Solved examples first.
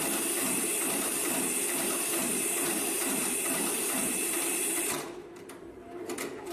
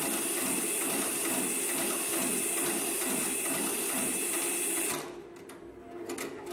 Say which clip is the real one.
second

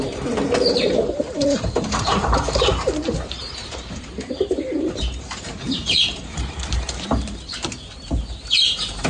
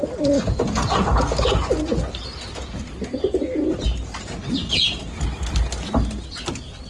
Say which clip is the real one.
second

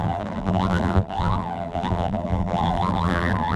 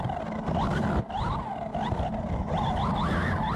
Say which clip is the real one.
second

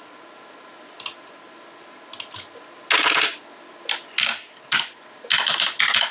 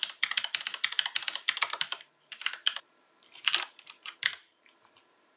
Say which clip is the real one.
first